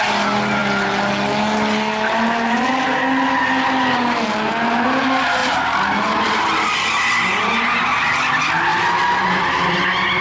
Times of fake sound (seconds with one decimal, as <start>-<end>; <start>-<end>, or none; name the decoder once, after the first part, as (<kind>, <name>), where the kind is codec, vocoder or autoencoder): none